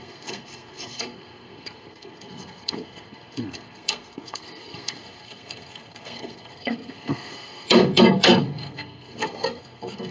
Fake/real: fake